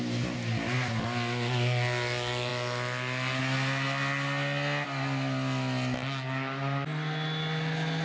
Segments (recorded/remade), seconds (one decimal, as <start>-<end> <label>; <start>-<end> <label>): 0.0-8.0 recorded